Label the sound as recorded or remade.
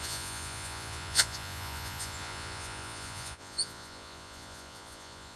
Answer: remade